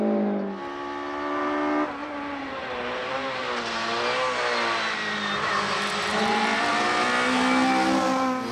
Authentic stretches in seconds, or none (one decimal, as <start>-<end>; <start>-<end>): 0.0-2.0; 3.4-6.1; 6.7-8.5